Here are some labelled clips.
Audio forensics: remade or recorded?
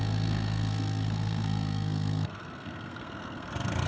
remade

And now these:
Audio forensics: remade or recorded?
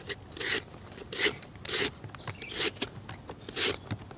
recorded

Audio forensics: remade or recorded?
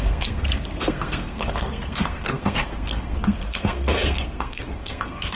remade